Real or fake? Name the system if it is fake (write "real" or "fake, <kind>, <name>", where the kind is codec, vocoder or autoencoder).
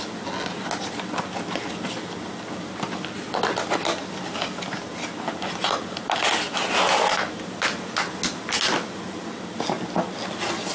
real